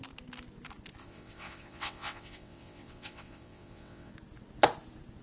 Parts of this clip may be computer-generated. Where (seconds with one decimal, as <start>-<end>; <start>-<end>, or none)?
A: 1.0-4.1